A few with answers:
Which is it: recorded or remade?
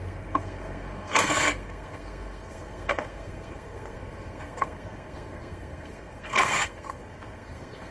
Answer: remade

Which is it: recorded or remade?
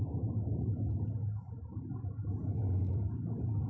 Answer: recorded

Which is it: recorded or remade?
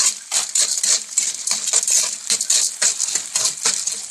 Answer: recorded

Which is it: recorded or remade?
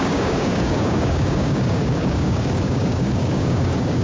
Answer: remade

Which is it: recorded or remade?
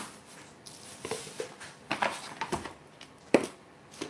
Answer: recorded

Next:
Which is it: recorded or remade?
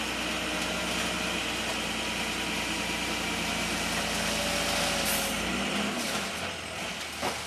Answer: recorded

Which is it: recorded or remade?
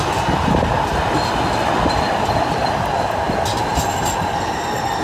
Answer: recorded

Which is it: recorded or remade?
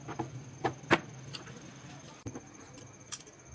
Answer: recorded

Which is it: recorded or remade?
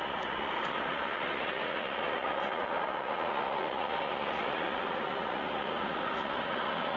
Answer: remade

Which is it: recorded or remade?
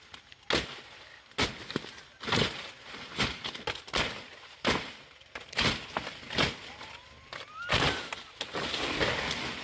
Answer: recorded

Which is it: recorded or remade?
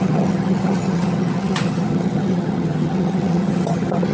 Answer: remade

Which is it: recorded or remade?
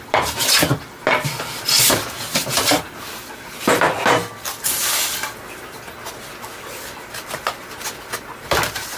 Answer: recorded